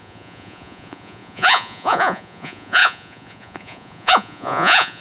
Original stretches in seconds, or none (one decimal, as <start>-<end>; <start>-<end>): none